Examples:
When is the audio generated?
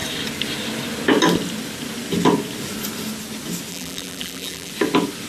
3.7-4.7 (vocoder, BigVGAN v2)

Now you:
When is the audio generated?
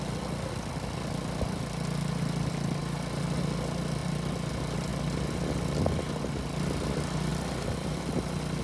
7.3-8.0 (vocoder, BigVGAN v2)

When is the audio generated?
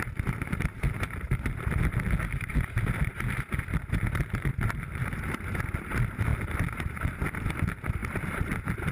0.0-8.9 (vocoder, BigVGAN v2)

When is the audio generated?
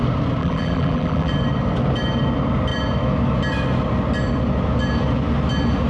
0.4-1.3 (vocoder, BigVGAN v2)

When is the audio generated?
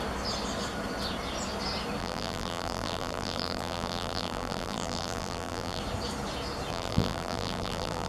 2.0-5.8 (vocoder, BigVGAN v2); 6.7-8.1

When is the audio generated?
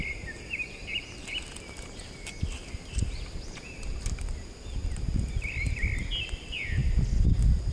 4.8-5.5 (vocoder, BigVGAN v2)